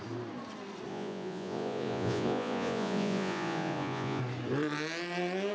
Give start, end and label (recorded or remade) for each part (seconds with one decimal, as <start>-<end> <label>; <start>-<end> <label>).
0.0-0.9 recorded; 0.9-4.2 remade; 4.2-5.5 recorded

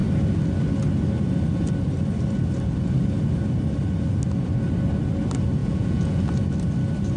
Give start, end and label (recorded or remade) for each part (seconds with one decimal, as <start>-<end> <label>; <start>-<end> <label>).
0.0-5.6 recorded; 5.6-6.2 remade; 6.2-7.2 recorded

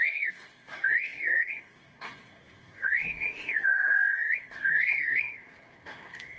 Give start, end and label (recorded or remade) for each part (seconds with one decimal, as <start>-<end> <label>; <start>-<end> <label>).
0.0-6.4 remade